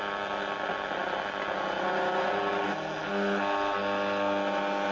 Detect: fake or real real